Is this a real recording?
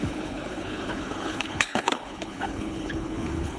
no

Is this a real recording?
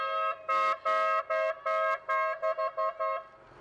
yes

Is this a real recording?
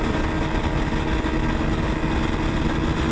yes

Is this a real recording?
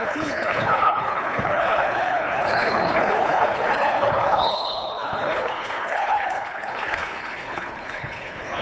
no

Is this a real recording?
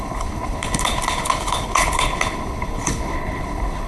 no